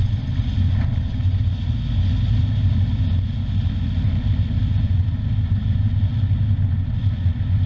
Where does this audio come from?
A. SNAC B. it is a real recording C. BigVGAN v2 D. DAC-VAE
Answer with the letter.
B